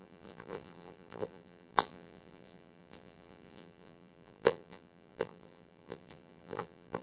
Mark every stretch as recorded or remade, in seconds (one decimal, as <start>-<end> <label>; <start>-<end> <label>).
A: 0.0-7.0 remade